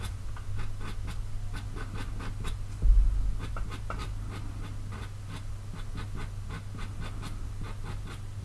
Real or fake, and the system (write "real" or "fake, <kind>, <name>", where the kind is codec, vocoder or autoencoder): real